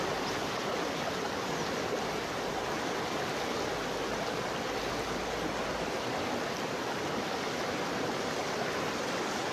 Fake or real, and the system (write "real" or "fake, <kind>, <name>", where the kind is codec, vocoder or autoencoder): real